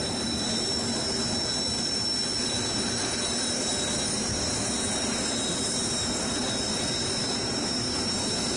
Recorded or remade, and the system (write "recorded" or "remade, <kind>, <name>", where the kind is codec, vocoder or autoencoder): recorded